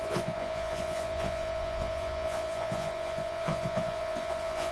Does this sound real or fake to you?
fake